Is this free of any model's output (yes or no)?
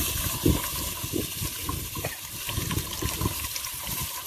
yes